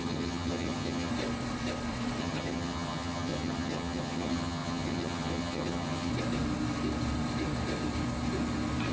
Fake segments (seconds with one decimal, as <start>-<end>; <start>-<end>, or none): 0.0-1.1; 2.2-6.1